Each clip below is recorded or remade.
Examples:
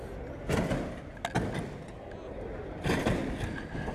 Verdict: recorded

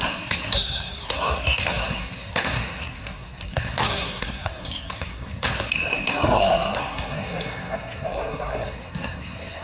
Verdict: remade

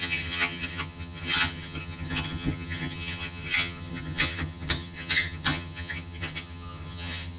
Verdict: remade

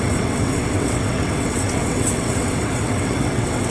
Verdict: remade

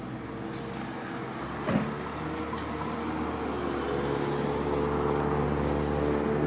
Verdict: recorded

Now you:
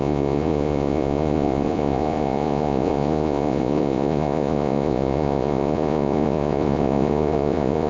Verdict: remade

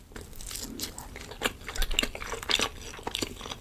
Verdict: recorded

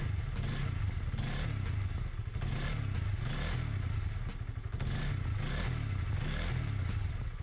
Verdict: recorded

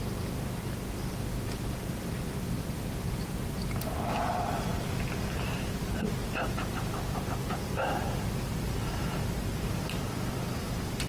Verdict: remade